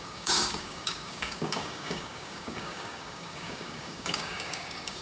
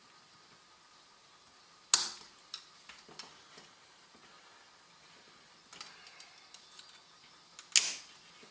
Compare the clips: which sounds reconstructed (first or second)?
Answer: first